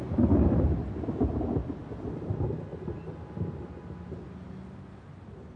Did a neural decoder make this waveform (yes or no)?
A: no